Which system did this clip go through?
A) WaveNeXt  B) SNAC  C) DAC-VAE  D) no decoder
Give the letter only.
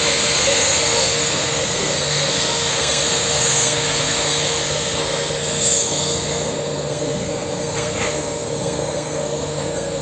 B